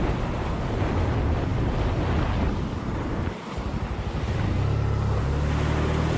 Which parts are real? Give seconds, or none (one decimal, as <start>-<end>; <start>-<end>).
0.0-6.2